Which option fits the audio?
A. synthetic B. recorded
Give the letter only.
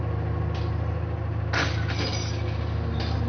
B